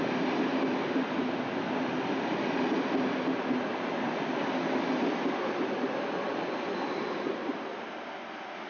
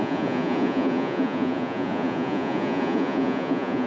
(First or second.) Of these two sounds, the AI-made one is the second